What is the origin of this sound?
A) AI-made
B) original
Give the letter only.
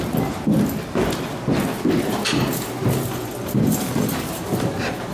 B